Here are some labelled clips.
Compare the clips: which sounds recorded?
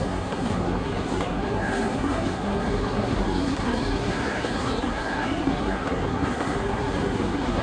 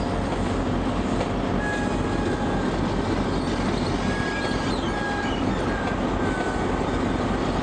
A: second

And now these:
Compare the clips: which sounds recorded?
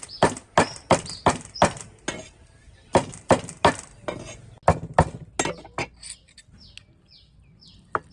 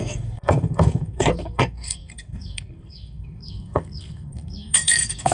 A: first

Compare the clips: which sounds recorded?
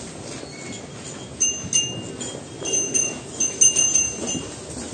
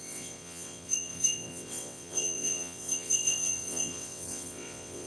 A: first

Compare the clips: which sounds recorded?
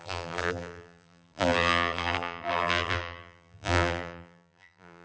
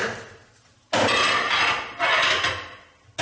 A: second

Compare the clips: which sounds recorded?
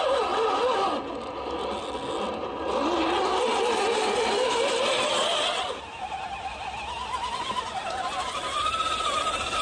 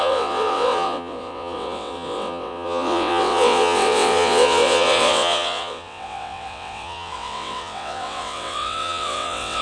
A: first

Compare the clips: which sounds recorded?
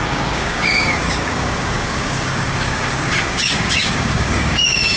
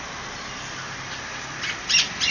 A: second